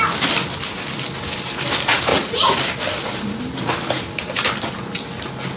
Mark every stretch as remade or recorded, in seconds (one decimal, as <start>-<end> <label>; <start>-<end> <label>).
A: 0.0-2.1 recorded; 2.1-2.6 remade; 2.6-5.6 recorded